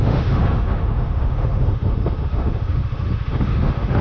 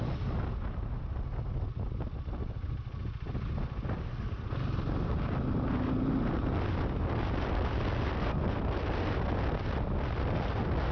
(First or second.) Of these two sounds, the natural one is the second